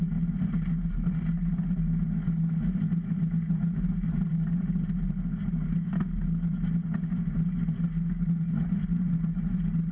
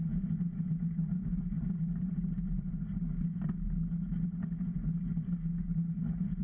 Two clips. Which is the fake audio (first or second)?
second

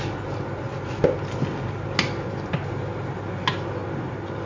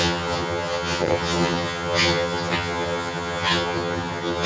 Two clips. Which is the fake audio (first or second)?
second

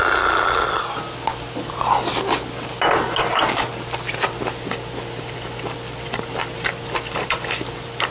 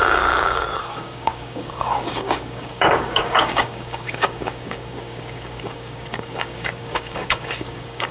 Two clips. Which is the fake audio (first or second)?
second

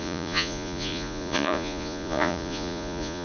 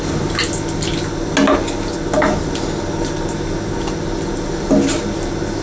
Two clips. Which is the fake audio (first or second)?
first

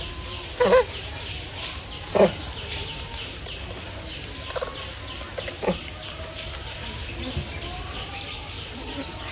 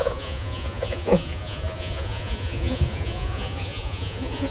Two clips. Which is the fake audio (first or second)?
second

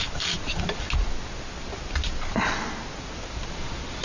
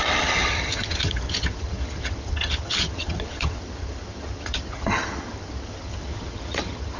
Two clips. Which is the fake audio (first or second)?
second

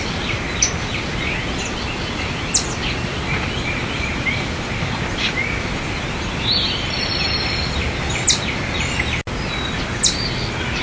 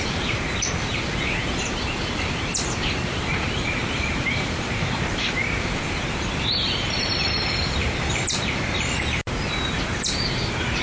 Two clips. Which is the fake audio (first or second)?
second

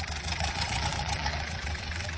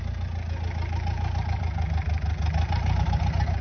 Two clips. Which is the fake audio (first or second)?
first